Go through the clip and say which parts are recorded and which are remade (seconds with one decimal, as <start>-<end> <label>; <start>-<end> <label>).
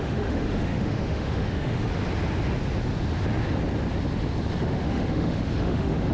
0.0-1.9 remade; 1.9-4.6 recorded; 4.6-6.1 remade